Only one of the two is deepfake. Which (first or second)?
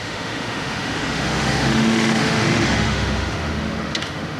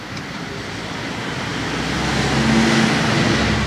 first